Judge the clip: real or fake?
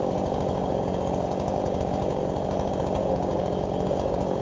fake